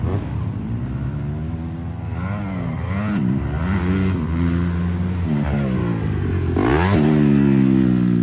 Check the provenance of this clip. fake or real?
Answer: real